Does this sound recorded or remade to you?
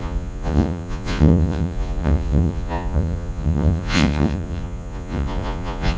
remade